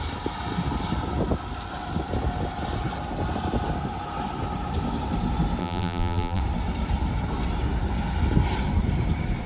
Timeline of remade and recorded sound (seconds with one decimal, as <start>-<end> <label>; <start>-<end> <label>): 0.0-5.6 recorded; 5.6-6.4 remade; 6.4-9.5 recorded

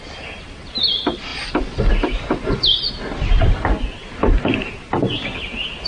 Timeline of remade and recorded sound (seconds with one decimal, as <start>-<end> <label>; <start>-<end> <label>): 0.0-1.3 recorded; 1.3-2.9 remade; 2.9-5.9 recorded

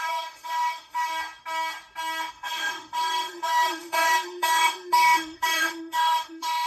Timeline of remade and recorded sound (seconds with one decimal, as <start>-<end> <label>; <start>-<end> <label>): 0.0-1.1 remade; 1.1-2.3 recorded; 2.3-6.7 remade

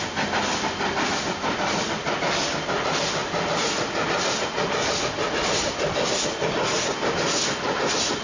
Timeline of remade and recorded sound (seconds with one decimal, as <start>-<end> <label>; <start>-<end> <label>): 0.0-8.2 recorded